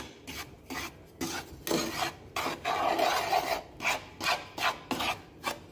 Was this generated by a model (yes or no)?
no